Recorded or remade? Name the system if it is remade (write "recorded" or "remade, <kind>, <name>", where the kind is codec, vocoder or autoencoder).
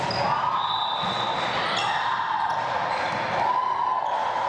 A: recorded